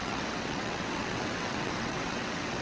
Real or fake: fake